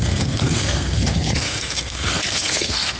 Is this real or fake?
fake